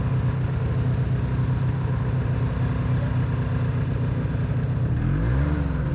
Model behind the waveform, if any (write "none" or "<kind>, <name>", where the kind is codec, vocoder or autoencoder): none